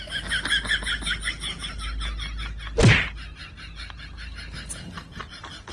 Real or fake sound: real